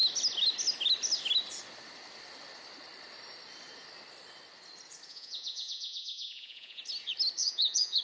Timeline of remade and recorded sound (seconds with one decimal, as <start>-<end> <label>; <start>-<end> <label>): 0.0-5.1 recorded; 5.1-6.8 remade; 6.8-7.4 recorded; 7.4-8.0 remade